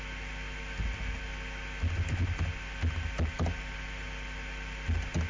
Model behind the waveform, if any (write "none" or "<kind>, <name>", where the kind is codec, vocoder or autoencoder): none